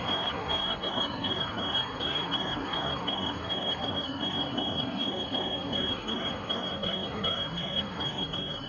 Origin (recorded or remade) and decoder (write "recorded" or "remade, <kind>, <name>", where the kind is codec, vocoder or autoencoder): remade, codec, SNAC